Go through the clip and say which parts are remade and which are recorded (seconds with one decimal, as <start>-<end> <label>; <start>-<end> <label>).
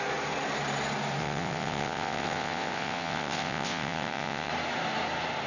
0.0-1.2 recorded; 1.2-4.5 remade; 4.5-5.5 recorded